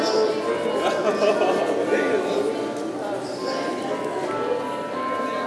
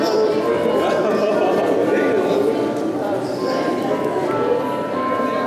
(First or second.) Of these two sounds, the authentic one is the first